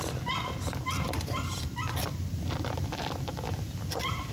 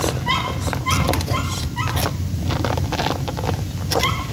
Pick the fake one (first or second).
first